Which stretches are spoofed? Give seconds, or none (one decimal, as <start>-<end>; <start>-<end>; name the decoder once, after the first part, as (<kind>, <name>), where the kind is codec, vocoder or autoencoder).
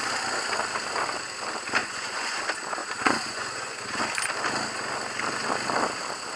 1.8-2.4 (vocoder, Vocos); 2.8-4.0